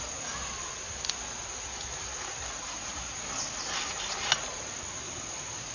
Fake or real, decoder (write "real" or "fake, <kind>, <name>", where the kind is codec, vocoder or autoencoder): real